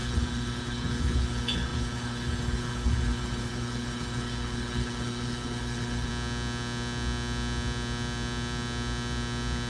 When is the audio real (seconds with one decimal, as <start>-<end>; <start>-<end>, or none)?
6.1-9.7